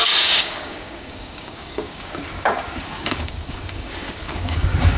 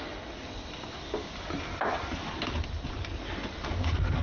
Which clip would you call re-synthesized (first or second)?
first